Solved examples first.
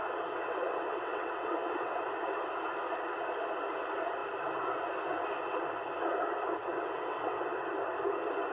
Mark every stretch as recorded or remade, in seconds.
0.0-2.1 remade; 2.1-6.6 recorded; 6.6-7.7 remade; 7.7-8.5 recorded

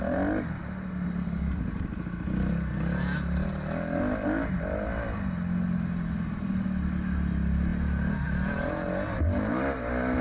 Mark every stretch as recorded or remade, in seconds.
0.0-10.2 recorded

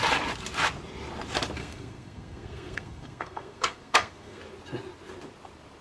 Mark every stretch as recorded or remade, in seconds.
0.0-1.6 recorded; 1.6-4.4 remade; 4.4-5.8 recorded

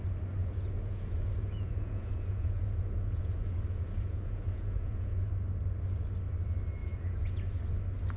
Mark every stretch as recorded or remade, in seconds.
0.0-0.4 recorded; 0.4-5.3 remade; 5.3-6.8 recorded; 6.8-7.6 remade; 7.6-8.2 recorded

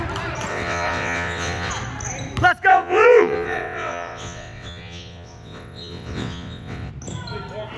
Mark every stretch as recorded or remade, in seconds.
0.0-0.5 recorded; 0.5-1.7 remade; 1.7-2.7 recorded; 2.7-6.9 remade; 6.9-7.8 recorded

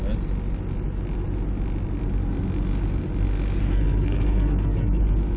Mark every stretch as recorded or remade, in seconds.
0.0-3.7 recorded; 3.7-5.0 remade; 5.0-5.4 recorded